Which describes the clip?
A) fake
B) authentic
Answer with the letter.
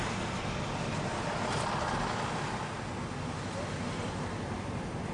B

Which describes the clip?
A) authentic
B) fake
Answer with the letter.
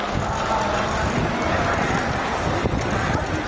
A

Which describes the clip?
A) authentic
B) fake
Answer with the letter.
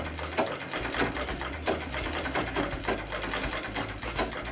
A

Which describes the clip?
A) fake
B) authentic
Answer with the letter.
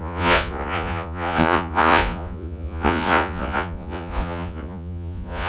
A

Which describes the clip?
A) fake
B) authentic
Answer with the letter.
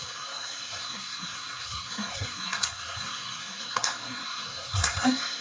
A